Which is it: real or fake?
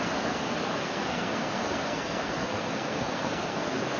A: fake